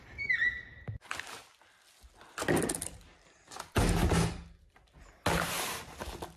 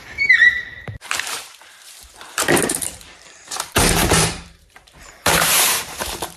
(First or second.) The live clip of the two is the first